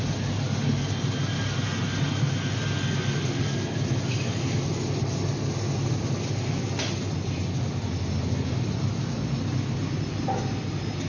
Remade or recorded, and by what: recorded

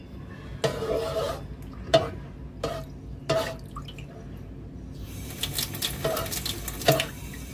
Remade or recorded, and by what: recorded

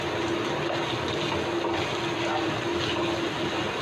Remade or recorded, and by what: recorded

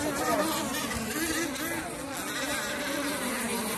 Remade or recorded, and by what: recorded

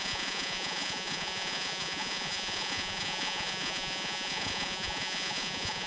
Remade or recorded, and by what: remade, vocoder, Vocos